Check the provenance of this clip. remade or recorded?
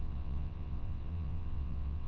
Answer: remade